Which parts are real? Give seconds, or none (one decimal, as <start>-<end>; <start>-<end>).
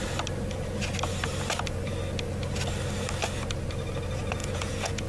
0.0-4.4